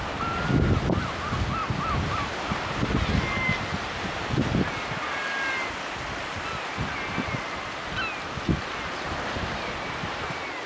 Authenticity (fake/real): real